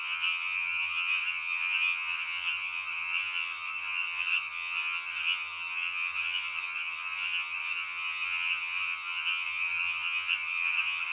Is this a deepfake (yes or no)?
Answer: yes